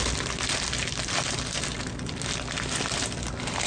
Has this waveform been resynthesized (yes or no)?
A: no